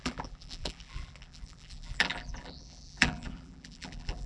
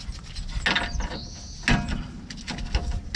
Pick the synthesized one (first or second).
first